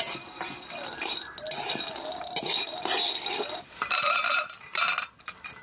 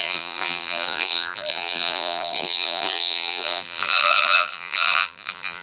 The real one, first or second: first